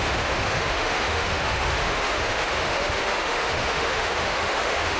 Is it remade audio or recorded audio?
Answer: remade